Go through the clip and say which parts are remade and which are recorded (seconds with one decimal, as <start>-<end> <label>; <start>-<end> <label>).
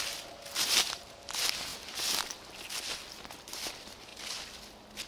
0.0-5.1 recorded